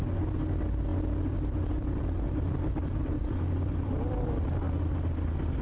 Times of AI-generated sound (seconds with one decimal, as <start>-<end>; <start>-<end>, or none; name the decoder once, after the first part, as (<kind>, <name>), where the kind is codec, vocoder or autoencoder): 0.9-4.3 (vocoder, BigVGAN v2)